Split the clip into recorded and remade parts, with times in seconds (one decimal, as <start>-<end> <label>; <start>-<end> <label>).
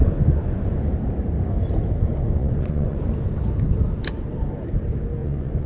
0.0-0.8 remade; 0.8-2.1 recorded; 2.1-3.1 remade; 3.1-5.2 recorded; 5.2-5.7 remade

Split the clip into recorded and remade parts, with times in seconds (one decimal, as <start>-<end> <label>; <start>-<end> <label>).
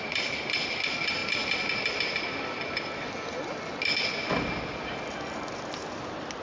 0.0-6.4 recorded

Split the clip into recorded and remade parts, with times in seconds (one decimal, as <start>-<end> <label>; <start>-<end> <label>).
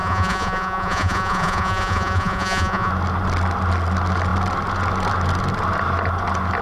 0.0-2.9 remade; 2.9-6.6 recorded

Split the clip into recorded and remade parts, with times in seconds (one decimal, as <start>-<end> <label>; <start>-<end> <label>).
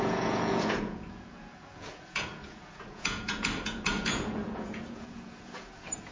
0.0-6.1 remade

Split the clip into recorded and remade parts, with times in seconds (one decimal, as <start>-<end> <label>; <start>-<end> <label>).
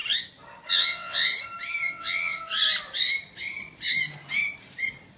0.0-0.7 recorded; 0.7-1.3 remade; 1.3-1.9 recorded; 1.9-2.5 remade; 2.5-5.2 recorded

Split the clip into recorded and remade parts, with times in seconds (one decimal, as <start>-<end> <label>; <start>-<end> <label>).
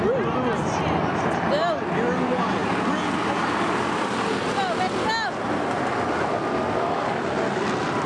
0.0-8.1 recorded